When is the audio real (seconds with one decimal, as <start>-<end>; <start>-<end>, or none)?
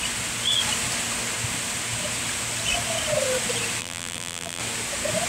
0.0-3.8; 4.6-5.3